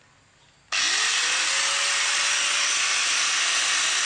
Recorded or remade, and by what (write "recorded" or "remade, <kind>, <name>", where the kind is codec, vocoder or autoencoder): recorded